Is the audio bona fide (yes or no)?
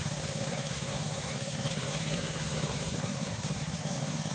no